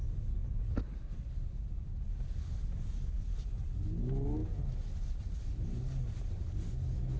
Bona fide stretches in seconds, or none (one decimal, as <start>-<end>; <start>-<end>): 0.0-7.2